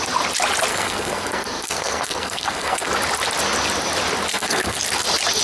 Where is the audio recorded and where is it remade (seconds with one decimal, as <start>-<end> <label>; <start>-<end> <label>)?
0.0-0.7 recorded; 0.7-2.9 remade; 2.9-4.3 recorded; 4.3-4.8 remade; 4.8-5.4 recorded